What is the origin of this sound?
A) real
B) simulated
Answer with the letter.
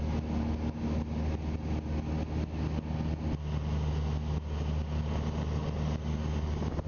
A